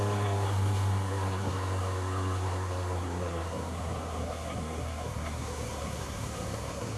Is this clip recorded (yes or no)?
no